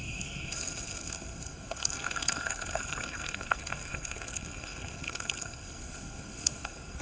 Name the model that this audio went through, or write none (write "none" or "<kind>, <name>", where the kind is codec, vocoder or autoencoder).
codec, SNAC